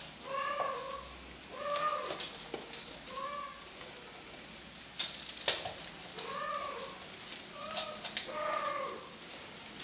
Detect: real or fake real